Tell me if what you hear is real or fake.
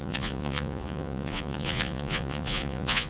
fake